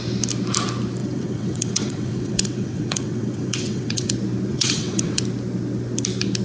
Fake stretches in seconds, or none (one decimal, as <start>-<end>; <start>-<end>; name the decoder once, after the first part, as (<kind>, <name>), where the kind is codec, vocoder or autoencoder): 1.0-4.1 (vocoder, WaveNeXt); 4.5-5.2